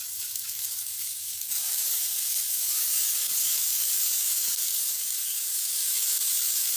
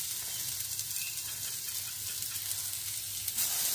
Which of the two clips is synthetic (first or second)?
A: first